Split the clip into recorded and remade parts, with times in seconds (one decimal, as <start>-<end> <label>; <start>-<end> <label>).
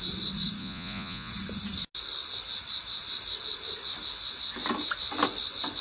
0.0-0.6 recorded; 0.6-1.3 remade; 1.3-5.8 recorded